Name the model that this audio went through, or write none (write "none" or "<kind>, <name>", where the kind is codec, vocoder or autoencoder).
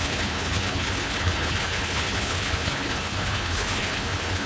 codec, HILCodec